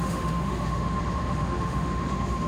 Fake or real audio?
fake